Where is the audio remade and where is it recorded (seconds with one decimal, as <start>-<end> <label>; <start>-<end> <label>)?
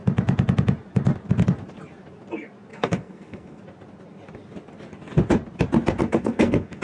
0.0-2.7 recorded; 2.7-3.6 remade; 3.6-6.0 recorded; 6.0-6.8 remade